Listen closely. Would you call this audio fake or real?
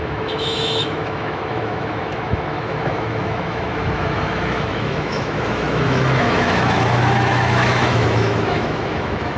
fake